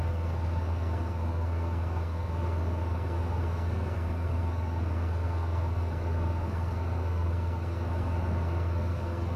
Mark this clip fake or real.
fake